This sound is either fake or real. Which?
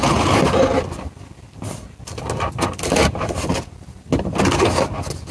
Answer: real